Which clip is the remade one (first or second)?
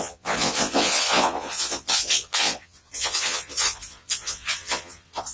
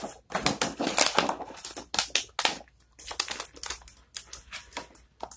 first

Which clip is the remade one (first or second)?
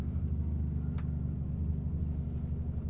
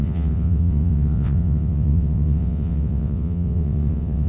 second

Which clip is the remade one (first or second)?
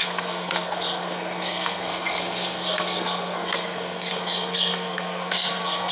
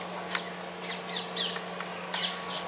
first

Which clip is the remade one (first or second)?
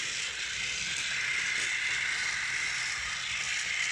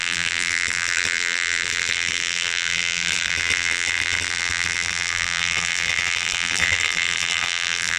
second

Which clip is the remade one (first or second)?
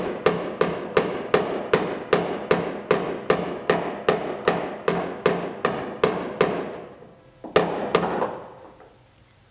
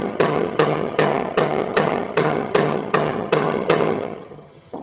second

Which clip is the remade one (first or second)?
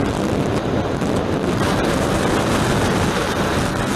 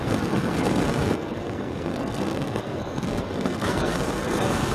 second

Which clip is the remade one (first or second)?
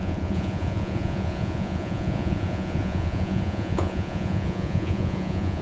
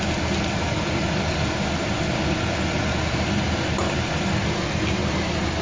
first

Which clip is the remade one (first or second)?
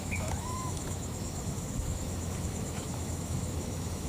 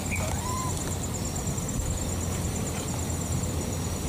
first